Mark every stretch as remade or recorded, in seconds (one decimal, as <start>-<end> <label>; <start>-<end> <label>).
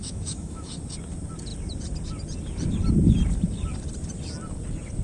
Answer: 0.0-0.7 remade; 0.7-5.0 recorded